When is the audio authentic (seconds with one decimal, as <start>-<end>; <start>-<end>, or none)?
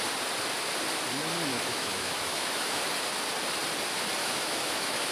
0.0-1.5; 2.8-4.2